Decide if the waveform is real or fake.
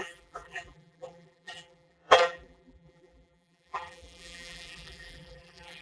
fake